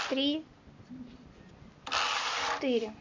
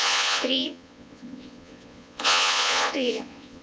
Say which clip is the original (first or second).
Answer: first